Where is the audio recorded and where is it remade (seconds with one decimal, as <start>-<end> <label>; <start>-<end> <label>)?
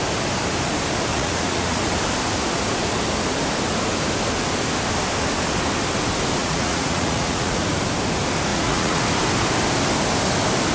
0.0-1.1 recorded; 1.1-1.8 remade; 1.8-6.4 recorded; 6.4-7.6 remade; 7.6-8.5 recorded; 8.5-9.0 remade; 9.0-10.7 recorded